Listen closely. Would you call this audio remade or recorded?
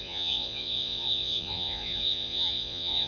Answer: remade